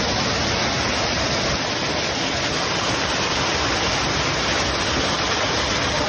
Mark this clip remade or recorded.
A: recorded